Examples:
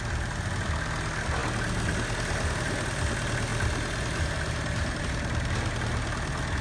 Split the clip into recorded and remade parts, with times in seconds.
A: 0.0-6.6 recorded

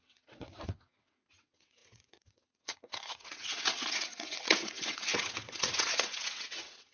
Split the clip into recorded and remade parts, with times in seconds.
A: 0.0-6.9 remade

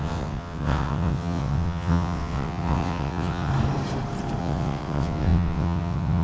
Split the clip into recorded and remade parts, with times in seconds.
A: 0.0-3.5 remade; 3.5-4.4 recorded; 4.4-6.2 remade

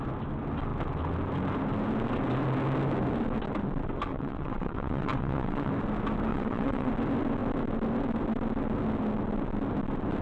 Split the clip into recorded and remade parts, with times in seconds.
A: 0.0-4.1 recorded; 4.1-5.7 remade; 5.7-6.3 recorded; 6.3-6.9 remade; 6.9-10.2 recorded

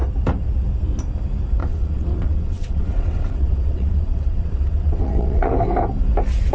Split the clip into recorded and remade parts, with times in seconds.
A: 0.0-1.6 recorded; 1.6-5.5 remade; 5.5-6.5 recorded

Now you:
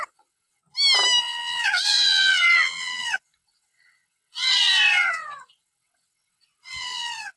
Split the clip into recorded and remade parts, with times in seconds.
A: 0.0-0.6 remade; 0.6-1.2 recorded; 1.2-7.4 remade

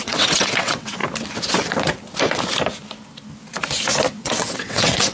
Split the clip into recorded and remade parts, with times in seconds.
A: 0.0-1.0 remade; 1.0-4.1 recorded; 4.1-5.1 remade

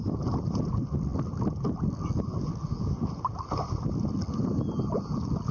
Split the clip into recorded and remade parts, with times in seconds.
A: 0.0-5.5 recorded